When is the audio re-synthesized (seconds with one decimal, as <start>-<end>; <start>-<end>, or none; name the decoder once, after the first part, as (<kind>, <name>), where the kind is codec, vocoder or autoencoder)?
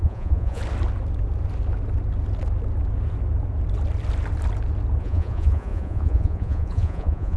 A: 0.0-0.6 (vocoder, Vocos); 5.0-7.4